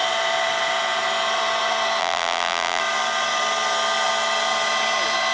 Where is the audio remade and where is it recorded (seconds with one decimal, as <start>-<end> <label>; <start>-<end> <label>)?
0.0-2.0 recorded; 2.0-2.8 remade; 2.8-5.3 recorded